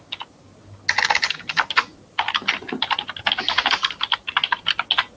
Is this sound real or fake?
real